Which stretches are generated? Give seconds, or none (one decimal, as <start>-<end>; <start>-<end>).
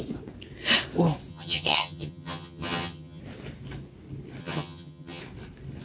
1.3-3.2; 4.4-5.2